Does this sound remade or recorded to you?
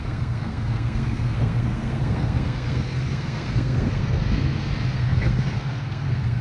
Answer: remade